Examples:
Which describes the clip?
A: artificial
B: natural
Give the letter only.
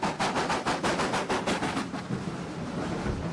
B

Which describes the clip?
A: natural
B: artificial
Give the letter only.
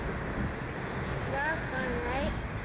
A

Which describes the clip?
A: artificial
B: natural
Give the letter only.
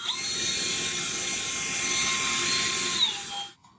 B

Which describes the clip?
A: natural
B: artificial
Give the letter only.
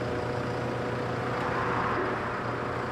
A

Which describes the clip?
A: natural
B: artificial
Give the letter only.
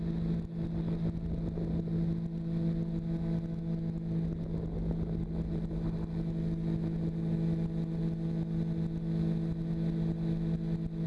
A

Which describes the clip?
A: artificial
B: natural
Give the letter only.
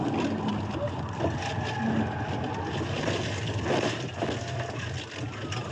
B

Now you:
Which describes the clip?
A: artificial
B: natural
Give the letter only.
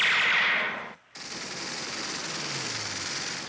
B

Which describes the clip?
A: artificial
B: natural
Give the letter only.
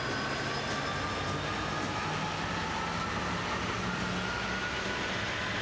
B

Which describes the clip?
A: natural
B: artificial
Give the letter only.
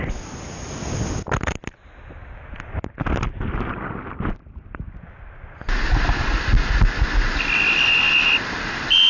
A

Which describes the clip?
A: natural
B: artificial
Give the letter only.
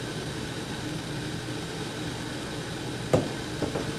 A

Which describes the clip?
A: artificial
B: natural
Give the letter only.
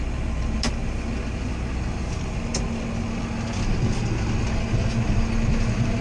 B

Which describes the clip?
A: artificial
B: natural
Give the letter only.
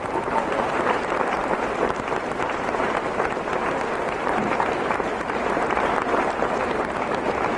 A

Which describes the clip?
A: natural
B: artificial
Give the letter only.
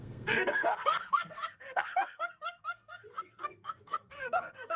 B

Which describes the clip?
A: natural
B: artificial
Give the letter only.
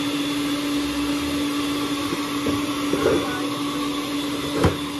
A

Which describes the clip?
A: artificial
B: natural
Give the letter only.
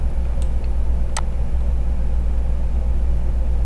B